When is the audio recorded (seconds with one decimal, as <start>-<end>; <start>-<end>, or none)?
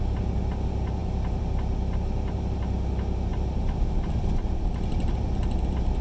0.0-1.0; 2.4-3.3; 5.6-6.0